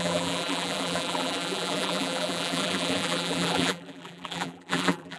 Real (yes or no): no